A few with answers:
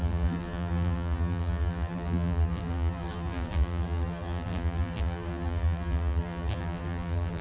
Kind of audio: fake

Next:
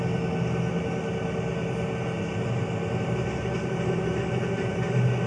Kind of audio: real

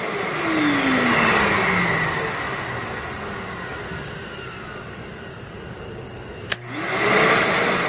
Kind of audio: real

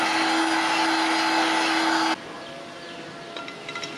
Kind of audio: real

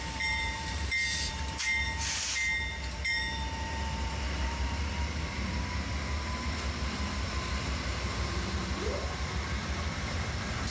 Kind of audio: fake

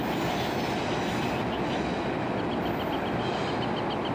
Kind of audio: real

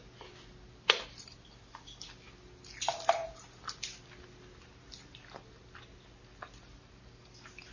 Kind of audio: real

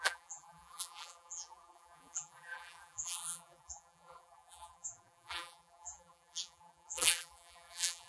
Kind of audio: fake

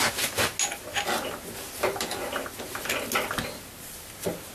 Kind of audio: real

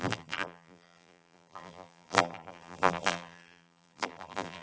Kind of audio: fake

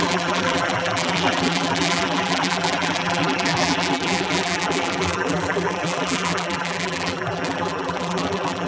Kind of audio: fake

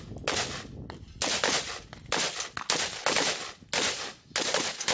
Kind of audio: real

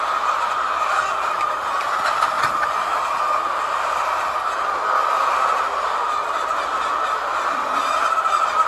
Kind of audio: real